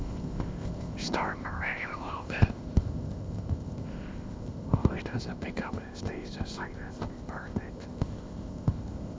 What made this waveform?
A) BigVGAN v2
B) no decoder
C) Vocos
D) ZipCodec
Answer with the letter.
D